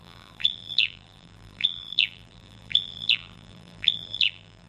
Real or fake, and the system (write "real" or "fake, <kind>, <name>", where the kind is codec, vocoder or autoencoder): fake, vocoder, BigVGAN v2